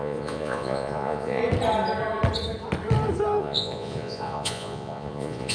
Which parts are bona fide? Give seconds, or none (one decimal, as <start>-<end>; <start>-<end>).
1.4-3.4